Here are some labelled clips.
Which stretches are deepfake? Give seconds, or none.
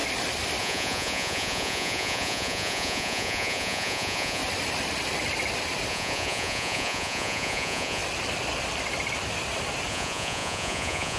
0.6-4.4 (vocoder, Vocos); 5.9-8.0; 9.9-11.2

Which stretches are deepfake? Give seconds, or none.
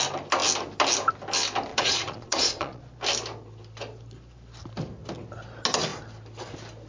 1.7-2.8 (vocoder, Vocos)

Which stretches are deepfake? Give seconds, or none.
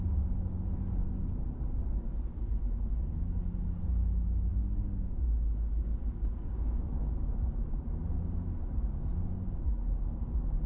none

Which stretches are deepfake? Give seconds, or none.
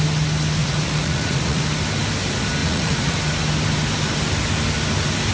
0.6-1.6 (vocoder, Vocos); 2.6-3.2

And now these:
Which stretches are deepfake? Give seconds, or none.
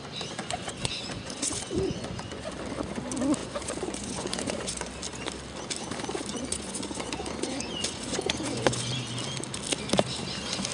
0.4-2.5 (vocoder, Vocos); 3.4-4.9; 6.3-8.9